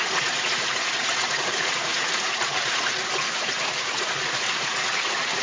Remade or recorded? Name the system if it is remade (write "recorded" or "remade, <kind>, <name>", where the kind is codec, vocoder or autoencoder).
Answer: remade, vocoder, Vocos